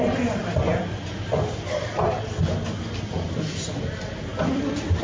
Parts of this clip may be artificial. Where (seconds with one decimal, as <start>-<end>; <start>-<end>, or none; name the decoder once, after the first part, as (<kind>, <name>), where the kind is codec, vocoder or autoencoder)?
4.3-5.0 (vocoder, BigVGAN v2)